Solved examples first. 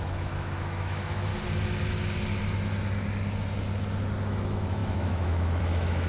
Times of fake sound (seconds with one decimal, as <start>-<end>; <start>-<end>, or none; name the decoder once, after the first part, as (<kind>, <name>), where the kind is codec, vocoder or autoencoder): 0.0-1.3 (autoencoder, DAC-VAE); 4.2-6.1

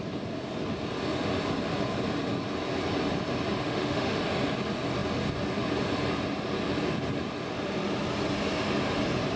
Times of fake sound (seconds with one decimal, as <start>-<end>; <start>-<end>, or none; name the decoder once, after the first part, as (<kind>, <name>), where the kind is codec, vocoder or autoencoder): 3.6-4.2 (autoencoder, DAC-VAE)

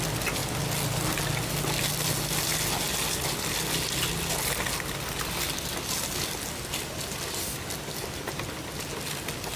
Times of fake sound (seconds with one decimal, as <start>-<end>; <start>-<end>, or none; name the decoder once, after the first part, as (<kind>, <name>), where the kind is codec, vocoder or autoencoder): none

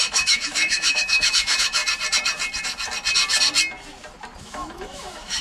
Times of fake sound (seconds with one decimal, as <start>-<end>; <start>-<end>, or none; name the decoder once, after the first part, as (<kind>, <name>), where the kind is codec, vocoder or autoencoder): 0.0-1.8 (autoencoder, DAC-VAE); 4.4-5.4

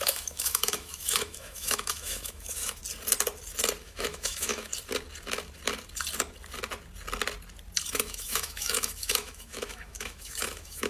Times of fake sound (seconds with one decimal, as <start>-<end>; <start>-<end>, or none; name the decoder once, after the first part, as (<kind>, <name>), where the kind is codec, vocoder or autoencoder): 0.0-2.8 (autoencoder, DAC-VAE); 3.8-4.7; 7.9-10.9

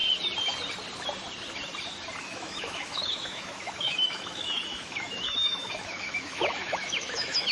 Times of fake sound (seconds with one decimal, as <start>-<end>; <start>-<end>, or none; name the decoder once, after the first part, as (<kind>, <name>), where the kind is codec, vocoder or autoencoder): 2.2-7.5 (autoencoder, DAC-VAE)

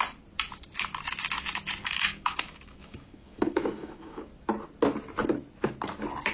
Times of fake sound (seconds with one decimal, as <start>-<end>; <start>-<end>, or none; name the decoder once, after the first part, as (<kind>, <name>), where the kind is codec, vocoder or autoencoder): 1.8-4.3 (autoencoder, DAC-VAE)